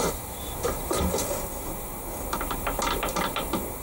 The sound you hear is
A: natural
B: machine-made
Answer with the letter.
A